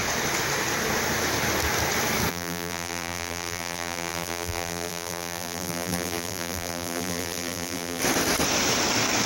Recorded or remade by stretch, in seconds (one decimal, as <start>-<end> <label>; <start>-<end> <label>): 0.0-2.3 recorded; 2.3-8.0 remade; 8.0-9.3 recorded